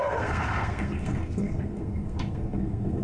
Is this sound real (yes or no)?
no